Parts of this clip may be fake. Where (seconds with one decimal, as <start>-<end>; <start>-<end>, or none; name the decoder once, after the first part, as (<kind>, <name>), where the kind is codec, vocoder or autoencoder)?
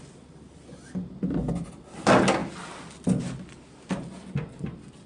none